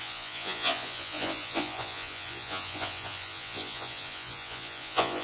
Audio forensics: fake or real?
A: fake